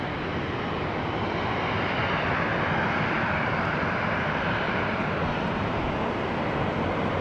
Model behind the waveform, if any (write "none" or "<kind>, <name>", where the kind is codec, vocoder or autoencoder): none